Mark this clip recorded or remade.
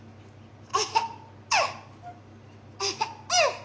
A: recorded